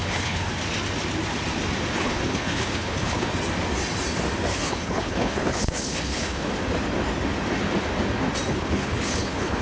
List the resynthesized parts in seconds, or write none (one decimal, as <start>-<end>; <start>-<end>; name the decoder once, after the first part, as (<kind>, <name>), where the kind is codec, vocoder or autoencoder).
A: 0.0-0.5 (codec, HILCodec); 1.9-3.3; 4.5-6.5; 8.5-9.6